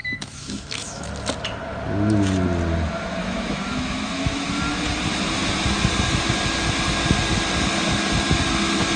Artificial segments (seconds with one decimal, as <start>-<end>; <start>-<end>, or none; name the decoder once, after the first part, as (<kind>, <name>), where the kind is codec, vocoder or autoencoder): 0.0-1.1 (autoencoder, DAC-VAE); 3.2-4.6